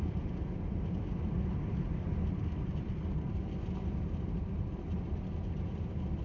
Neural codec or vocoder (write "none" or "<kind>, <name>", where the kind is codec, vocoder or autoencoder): none